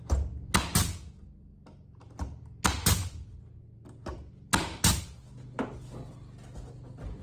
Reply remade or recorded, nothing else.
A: recorded